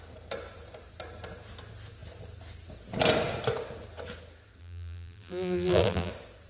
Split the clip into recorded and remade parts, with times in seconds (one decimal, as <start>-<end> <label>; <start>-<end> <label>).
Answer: 0.0-4.6 recorded; 4.6-6.1 remade; 6.1-6.5 recorded